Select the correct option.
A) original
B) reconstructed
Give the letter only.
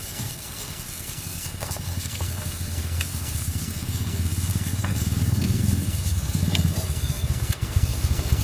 B